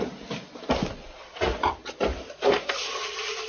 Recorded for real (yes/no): yes